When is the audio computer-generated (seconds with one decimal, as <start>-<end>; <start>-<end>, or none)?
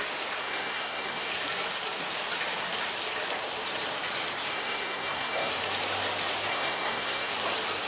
0.4-1.3; 4.5-5.5; 6.5-7.3